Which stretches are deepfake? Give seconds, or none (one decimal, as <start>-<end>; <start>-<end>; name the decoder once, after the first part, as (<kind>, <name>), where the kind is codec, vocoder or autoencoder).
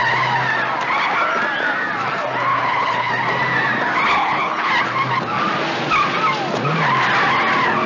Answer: 2.5-3.1 (codec, HILCodec); 4.2-4.7